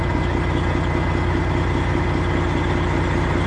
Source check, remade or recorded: recorded